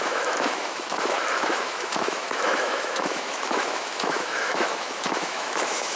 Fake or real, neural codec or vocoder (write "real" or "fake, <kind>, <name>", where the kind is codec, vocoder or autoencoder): fake, autoencoder, DAC-VAE